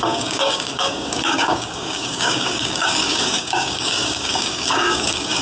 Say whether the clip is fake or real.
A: fake